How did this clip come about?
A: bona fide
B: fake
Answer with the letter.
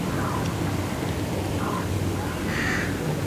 B